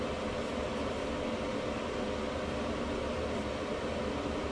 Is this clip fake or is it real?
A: real